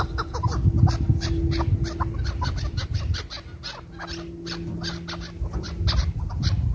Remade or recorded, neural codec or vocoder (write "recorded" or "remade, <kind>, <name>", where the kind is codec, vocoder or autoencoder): recorded